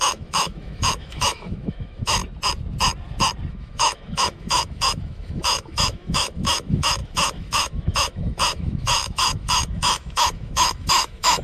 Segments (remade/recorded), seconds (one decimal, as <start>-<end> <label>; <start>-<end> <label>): 0.0-2.2 remade; 2.2-3.5 recorded; 3.5-11.4 remade